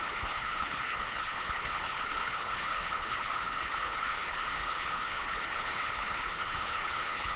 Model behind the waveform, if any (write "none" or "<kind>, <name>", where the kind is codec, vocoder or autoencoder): codec, HILCodec